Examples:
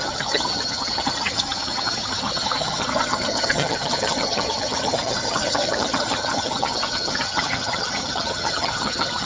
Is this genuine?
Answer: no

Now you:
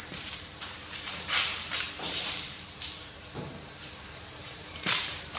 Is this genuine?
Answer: no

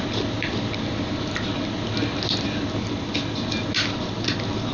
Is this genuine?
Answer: yes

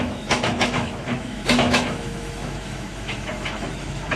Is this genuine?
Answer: no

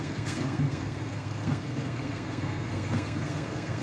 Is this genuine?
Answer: no